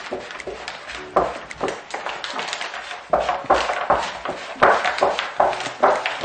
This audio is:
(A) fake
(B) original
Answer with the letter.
B